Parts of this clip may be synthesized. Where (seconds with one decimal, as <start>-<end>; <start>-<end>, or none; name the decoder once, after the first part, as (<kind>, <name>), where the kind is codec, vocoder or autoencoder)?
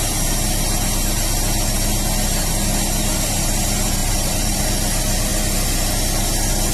4.0-4.6 (vocoder, BigVGAN v2)